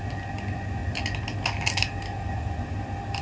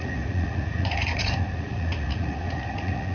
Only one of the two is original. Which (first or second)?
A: first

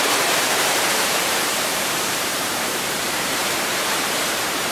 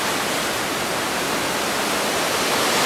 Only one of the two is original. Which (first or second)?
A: second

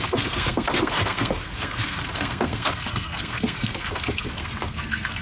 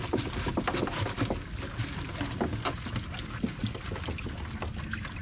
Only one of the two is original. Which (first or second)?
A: second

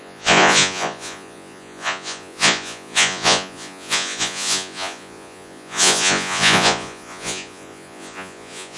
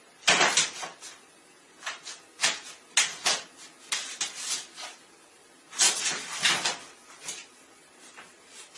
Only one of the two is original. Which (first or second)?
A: second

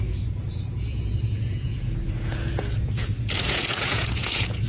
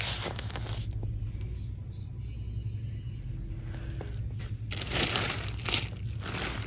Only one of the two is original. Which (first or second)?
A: second